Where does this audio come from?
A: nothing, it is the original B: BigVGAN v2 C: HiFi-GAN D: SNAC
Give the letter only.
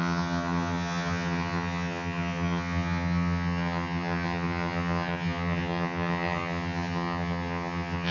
C